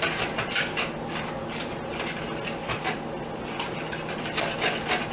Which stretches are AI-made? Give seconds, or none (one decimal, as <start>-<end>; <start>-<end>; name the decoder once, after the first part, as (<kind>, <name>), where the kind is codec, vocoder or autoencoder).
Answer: 2.6-3.2 (vocoder, BigVGAN v2)